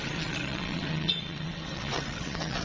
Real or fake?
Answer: fake